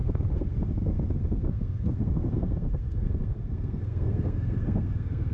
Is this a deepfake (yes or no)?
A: yes